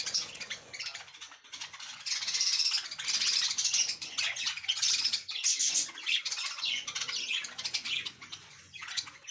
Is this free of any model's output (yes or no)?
no